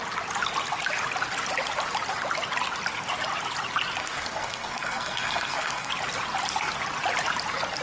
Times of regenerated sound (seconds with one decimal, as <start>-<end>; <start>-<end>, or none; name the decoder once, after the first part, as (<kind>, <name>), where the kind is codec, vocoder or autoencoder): 4.0-5.9 (codec, SNAC)

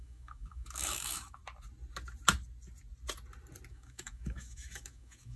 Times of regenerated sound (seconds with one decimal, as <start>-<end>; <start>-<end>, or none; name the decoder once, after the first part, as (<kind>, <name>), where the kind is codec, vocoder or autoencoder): 0.0-1.4 (autoencoder, DAC-VAE); 3.7-5.4